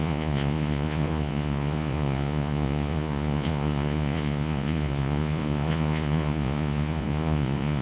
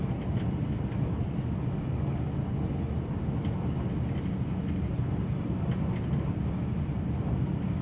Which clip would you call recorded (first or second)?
second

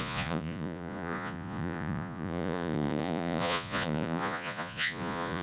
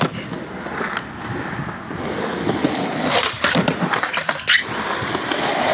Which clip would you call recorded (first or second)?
second